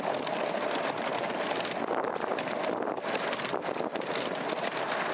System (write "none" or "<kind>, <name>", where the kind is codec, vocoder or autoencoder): none